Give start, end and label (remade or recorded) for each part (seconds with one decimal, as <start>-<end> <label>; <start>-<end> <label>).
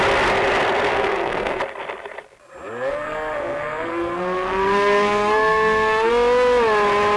0.0-0.9 recorded; 0.9-1.6 remade; 1.6-2.9 recorded; 2.9-6.1 remade; 6.1-7.2 recorded